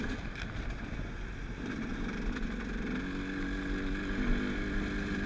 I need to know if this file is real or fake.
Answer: real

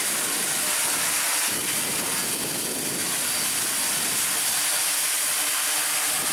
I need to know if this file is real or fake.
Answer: real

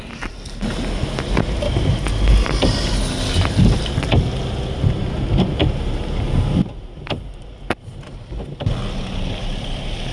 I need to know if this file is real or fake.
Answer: real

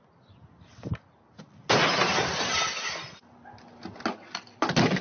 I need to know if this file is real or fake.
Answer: real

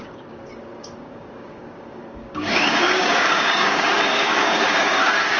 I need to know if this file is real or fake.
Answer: fake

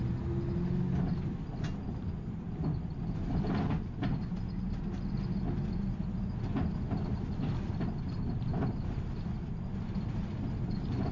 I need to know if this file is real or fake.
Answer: real